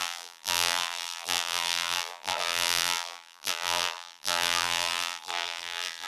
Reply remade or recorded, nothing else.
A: remade